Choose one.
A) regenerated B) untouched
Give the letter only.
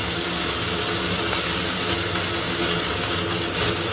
B